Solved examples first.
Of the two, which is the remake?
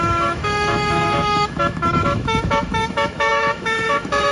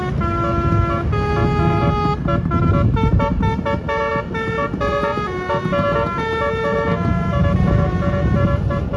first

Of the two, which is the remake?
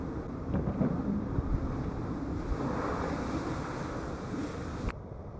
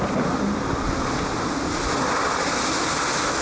first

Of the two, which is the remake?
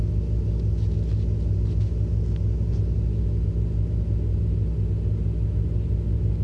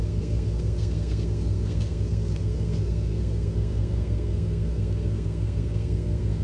second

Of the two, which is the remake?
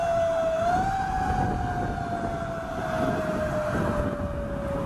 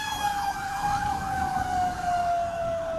second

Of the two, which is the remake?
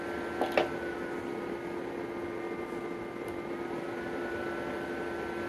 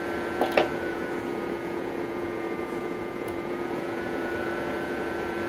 second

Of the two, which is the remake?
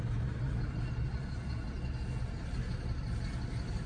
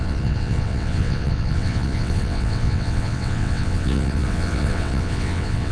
second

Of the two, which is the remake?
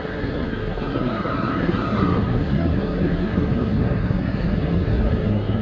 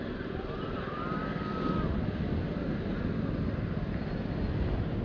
first